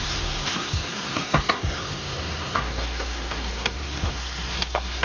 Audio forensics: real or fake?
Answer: fake